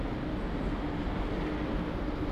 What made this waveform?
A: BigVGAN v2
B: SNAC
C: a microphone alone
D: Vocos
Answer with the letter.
C